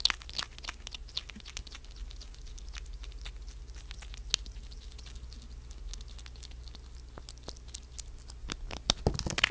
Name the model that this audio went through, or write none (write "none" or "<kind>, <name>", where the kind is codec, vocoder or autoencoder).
none